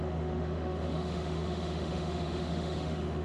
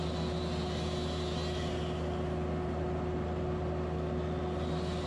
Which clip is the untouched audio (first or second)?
second